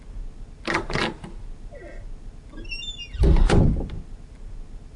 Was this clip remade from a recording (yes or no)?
no